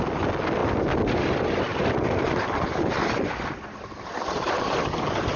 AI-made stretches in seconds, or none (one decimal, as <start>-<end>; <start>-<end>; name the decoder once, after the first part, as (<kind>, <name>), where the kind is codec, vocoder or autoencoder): none